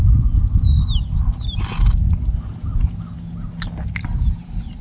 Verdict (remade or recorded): recorded